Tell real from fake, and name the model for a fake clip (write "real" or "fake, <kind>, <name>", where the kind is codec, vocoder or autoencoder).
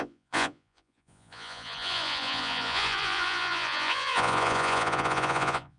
fake, vocoder, Vocos